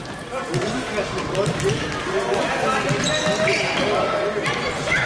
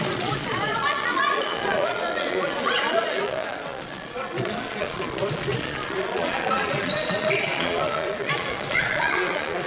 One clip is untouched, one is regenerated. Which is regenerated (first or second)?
second